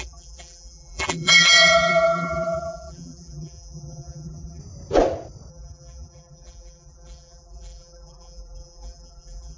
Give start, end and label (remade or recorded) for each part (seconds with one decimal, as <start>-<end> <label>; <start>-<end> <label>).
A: 0.0-4.6 remade; 4.6-5.5 recorded; 5.5-9.6 remade